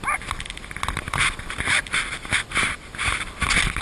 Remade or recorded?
recorded